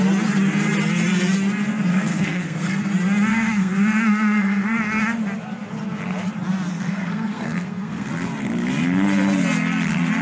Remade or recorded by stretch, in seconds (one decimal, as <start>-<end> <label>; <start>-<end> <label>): 0.0-1.9 recorded; 1.9-2.8 remade; 2.8-3.3 recorded; 3.3-5.0 remade; 5.0-6.7 recorded; 6.7-8.1 remade; 8.1-10.2 recorded